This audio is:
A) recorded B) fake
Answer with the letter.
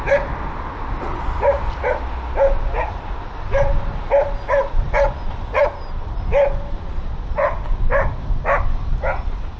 A